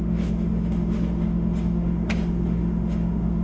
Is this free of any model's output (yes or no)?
no